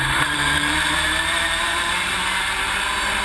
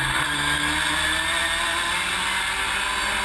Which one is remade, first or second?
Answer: first